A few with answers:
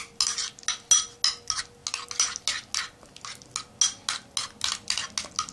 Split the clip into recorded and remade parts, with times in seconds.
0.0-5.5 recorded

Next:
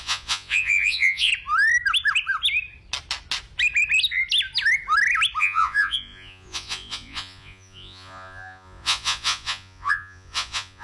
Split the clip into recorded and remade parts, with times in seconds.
0.0-1.3 remade; 1.3-5.4 recorded; 5.4-10.8 remade

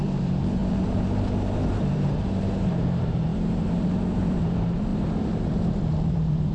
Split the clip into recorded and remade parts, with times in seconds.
0.0-6.5 remade

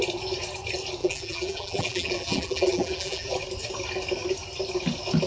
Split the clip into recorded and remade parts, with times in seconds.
0.0-1.0 recorded; 1.0-3.3 remade; 3.3-5.3 recorded

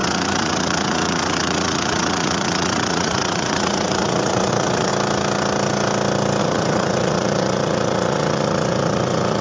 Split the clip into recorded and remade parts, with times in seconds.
0.0-4.9 remade; 4.9-6.4 recorded; 6.4-9.4 remade

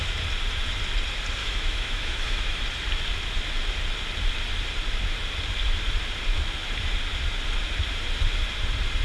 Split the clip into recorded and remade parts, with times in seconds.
0.0-1.4 recorded; 1.4-2.6 remade; 2.6-9.0 recorded

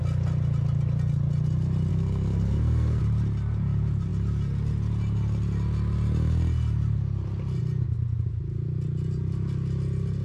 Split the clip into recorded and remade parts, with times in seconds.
0.0-1.9 recorded; 1.9-3.0 remade; 3.0-10.2 recorded

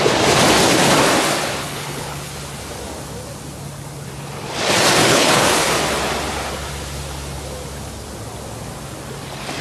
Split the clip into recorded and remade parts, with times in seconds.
0.0-1.6 recorded; 1.6-2.3 remade; 2.3-5.1 recorded; 5.1-5.7 remade; 5.7-9.6 recorded